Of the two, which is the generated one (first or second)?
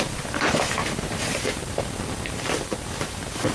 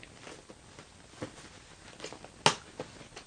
first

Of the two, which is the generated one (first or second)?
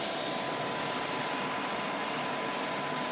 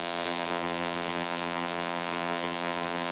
second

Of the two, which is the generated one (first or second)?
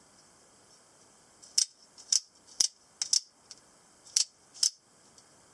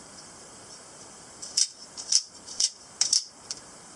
second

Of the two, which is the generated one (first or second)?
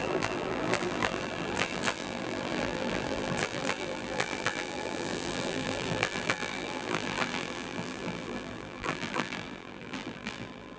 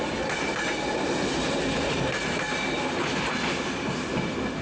first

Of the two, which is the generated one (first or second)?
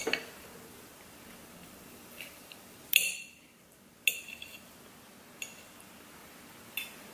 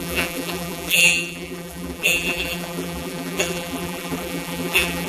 second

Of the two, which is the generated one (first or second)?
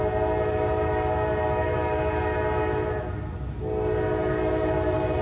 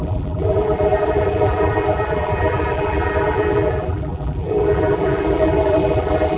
second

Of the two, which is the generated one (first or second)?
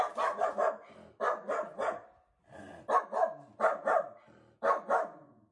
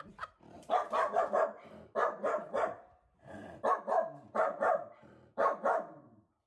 second